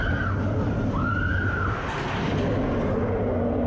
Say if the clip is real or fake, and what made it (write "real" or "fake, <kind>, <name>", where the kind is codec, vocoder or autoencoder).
real